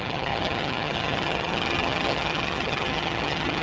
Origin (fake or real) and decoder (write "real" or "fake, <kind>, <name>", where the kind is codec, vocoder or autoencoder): fake, vocoder, HiFi-GAN